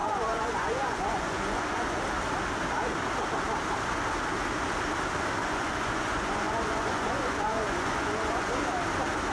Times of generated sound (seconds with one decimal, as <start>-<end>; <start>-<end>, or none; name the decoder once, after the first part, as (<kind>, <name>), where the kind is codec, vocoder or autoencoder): 0.0-2.0 (vocoder, Vocos); 5.4-8.5